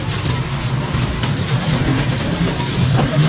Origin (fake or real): real